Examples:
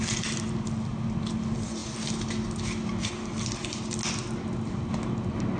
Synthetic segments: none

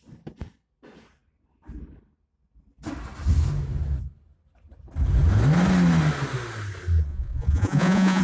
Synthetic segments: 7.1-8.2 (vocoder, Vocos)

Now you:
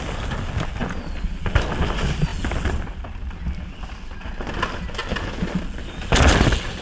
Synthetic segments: none

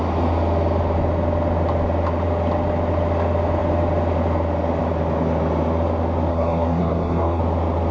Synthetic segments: 6.3-7.4 (codec, SNAC)

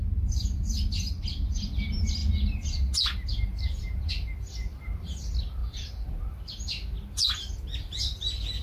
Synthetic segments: none